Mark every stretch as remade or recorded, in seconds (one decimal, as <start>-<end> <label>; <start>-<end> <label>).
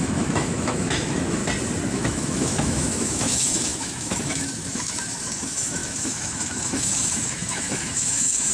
0.0-1.4 remade; 1.4-1.9 recorded; 1.9-8.5 remade